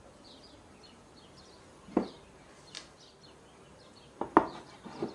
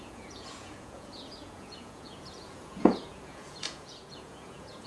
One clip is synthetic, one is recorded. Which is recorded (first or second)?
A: first